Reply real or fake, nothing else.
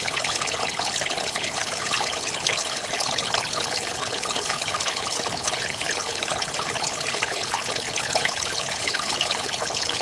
fake